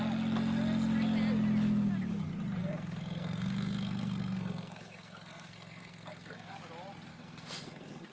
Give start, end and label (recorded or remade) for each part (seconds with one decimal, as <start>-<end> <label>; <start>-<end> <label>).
0.0-2.6 recorded; 2.6-6.6 remade; 6.6-7.1 recorded; 7.1-8.1 remade